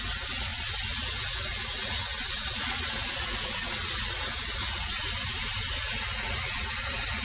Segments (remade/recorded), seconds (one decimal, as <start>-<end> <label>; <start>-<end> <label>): 0.0-4.9 remade; 4.9-5.7 recorded; 5.7-7.2 remade